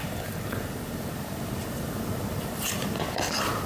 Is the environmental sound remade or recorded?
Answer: recorded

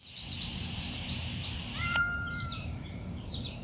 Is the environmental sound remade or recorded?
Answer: remade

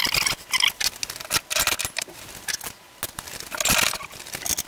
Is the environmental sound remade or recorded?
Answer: recorded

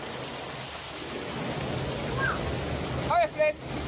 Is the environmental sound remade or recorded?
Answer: recorded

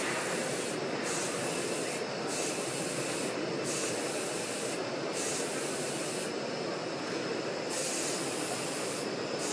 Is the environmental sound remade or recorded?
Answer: recorded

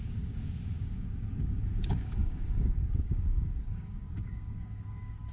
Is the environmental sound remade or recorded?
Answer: remade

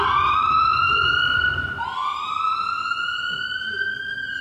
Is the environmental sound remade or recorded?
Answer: recorded